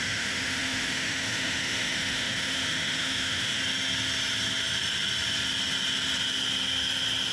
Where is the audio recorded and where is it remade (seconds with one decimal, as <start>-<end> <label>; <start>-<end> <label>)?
0.0-3.6 remade; 3.6-7.3 recorded